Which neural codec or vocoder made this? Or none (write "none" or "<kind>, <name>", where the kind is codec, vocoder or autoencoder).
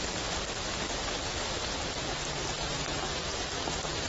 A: none